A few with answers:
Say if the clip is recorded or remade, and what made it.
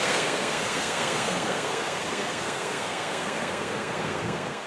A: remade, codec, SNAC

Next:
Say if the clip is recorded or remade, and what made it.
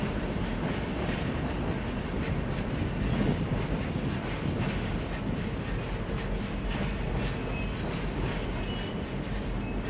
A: recorded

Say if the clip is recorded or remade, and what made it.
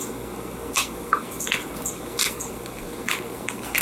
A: remade, codec, SNAC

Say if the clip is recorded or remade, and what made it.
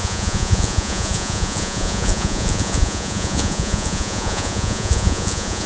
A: remade, vocoder, Vocos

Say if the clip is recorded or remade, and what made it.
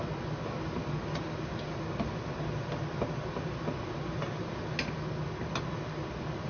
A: recorded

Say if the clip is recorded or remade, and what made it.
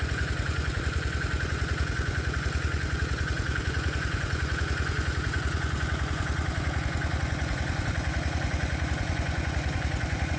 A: remade, vocoder, Vocos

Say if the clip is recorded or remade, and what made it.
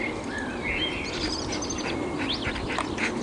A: recorded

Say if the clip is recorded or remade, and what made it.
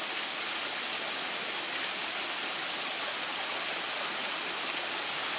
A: recorded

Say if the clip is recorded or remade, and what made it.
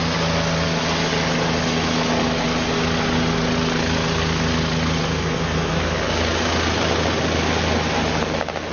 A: recorded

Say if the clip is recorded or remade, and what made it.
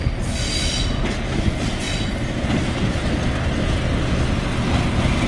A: recorded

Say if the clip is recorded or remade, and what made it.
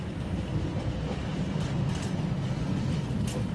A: recorded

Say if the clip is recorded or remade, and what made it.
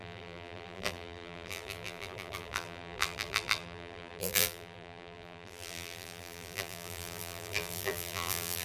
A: remade, vocoder, BigVGAN v2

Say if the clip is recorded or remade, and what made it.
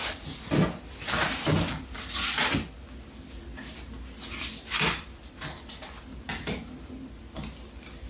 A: recorded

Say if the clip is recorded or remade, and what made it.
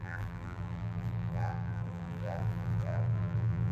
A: remade, vocoder, BigVGAN v2